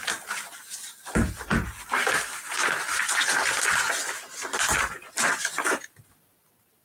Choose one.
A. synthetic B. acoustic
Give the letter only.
B